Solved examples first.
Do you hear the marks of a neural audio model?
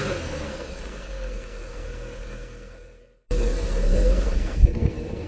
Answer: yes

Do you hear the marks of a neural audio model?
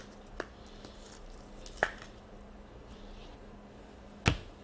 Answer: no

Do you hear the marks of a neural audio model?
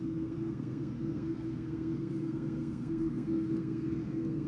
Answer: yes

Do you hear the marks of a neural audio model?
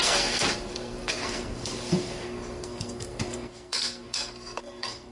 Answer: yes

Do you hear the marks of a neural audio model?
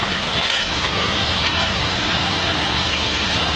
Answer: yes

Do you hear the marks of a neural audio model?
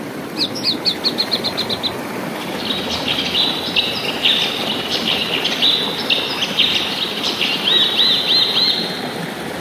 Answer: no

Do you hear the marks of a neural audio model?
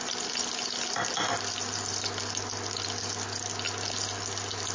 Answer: no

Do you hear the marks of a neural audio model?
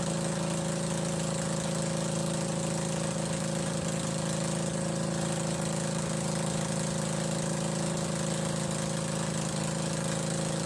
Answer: no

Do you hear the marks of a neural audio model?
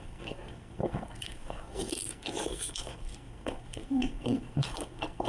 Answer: yes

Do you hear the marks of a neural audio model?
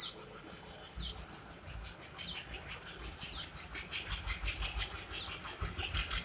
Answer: no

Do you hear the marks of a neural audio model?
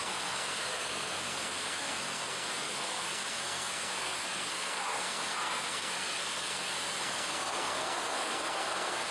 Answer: yes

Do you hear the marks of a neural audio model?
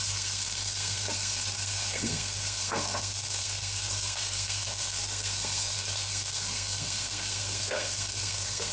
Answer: yes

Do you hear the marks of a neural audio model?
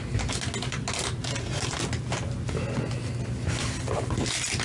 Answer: no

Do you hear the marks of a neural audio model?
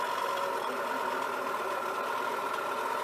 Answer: no